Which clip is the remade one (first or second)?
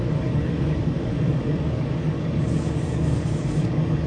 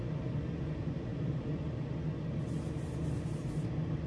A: first